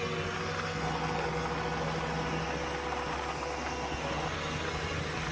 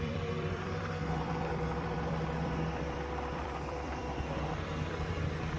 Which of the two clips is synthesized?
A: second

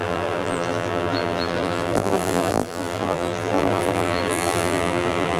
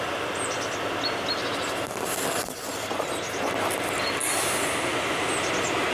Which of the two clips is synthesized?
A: first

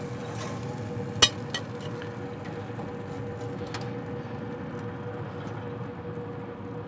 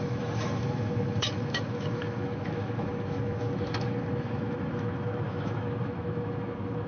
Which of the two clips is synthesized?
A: second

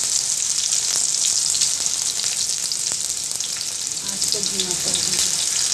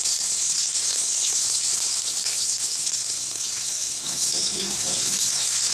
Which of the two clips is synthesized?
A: second